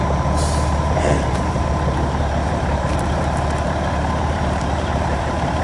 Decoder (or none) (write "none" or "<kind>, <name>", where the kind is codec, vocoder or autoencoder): vocoder, BigVGAN v2